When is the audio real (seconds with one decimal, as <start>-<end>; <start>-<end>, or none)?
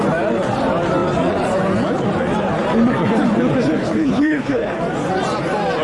0.0-3.8; 4.8-5.8